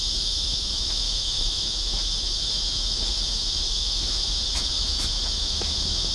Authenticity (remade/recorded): remade